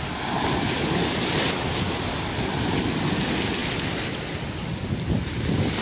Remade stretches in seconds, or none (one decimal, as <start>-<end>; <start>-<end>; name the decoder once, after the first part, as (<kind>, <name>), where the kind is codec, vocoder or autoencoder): none